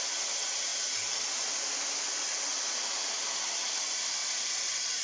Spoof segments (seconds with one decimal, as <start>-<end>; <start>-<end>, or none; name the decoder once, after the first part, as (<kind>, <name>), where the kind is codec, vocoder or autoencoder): 0.7-3.4 (vocoder, BigVGAN v2); 4.2-5.0